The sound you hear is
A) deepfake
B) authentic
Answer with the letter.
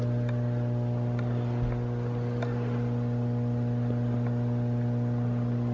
B